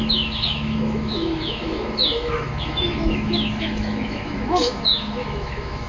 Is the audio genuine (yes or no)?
no